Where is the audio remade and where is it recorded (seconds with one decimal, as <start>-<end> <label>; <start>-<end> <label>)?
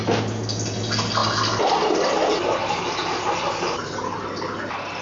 0.0-5.0 recorded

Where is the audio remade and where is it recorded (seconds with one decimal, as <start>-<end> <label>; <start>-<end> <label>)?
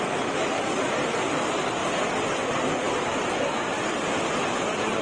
0.0-5.0 recorded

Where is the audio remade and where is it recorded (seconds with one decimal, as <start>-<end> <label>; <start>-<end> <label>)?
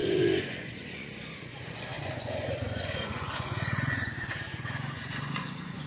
0.0-5.9 remade